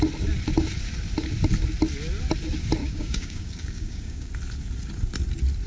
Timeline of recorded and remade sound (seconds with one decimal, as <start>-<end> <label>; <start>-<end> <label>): 0.0-2.8 recorded; 2.8-4.3 remade; 4.3-5.7 recorded